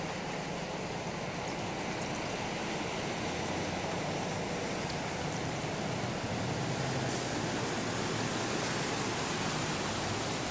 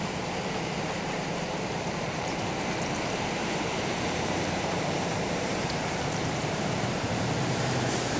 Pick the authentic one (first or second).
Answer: first